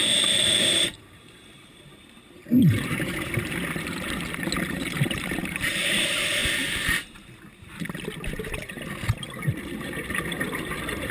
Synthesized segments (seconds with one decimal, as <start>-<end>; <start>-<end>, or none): 0.0-3.6; 4.6-6.4; 9.6-11.1

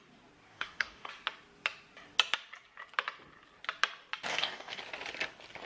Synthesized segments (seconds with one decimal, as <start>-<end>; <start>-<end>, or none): 0.5-1.1; 4.3-4.8

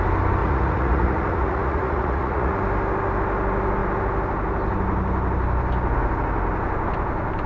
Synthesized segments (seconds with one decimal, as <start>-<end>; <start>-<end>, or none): 0.4-2.5

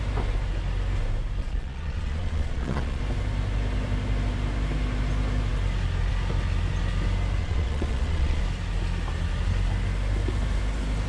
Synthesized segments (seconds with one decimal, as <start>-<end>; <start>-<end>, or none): 1.4-3.0; 7.4-8.4

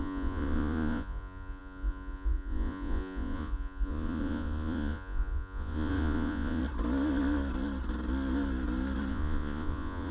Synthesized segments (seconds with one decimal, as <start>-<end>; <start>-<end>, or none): 0.0-6.6; 9.1-10.1